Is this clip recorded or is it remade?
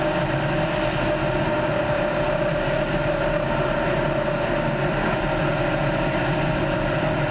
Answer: recorded